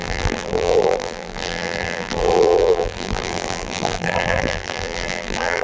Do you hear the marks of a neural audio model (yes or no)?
yes